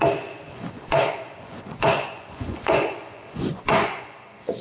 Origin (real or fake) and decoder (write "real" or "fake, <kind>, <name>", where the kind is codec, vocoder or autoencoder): fake, vocoder, Vocos